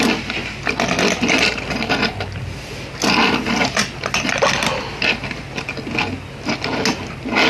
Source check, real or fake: real